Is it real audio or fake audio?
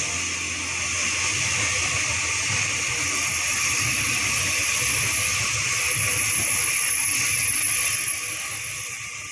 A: real